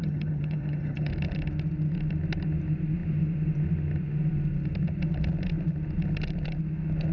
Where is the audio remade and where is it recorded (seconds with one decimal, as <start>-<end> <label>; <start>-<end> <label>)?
0.0-1.1 remade; 1.1-7.1 recorded